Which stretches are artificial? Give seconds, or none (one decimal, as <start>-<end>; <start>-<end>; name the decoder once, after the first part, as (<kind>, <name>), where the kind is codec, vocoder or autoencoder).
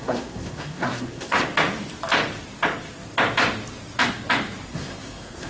0.0-1.4 (codec, SNAC); 4.7-5.5